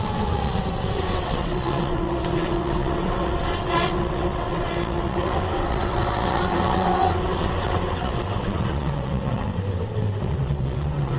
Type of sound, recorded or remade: remade